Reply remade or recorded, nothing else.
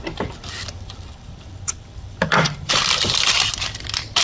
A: remade